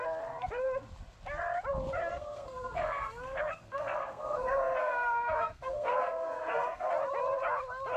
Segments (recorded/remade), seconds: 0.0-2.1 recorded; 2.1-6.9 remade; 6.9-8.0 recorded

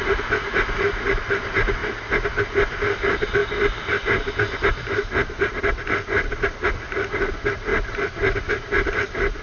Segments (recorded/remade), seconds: 0.0-9.4 recorded